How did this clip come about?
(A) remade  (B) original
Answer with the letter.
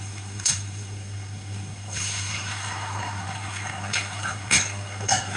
A